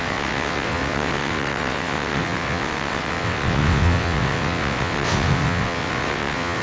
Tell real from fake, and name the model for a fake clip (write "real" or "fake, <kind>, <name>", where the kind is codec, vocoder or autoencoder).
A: fake, vocoder, WaveNeXt